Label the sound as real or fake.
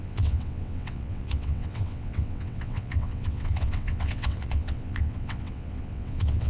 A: fake